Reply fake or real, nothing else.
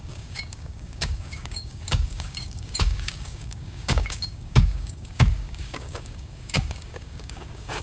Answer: fake